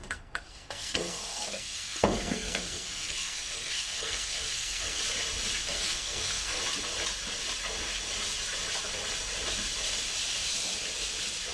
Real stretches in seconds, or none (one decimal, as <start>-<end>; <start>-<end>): 5.0-5.6; 6.6-11.5

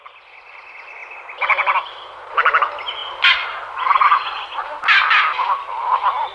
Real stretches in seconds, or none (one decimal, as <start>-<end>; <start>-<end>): 0.0-6.3

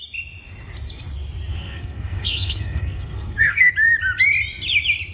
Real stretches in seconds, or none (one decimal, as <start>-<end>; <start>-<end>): 0.0-1.5; 3.7-5.1